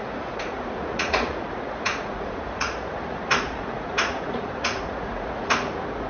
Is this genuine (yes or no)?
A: no